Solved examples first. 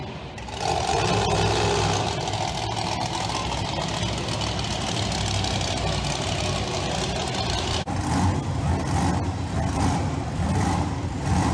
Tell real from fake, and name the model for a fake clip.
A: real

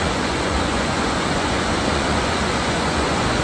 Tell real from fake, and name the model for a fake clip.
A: fake, vocoder, Vocos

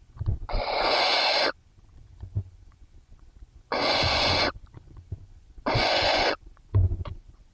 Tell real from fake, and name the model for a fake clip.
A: fake, vocoder, Vocos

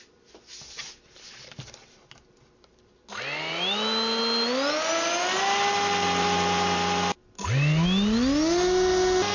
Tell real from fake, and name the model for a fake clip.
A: real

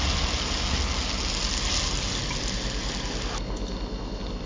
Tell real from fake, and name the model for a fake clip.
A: real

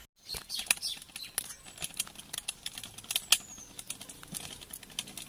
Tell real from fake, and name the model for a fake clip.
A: real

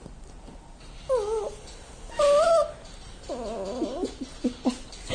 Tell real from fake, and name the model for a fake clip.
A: real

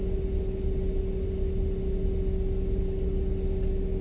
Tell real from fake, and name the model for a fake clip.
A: real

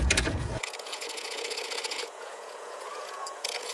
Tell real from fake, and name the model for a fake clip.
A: fake, vocoder, Vocos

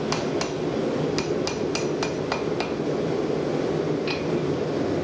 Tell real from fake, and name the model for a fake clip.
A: real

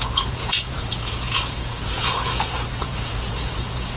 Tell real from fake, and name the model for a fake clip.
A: fake, vocoder, Vocos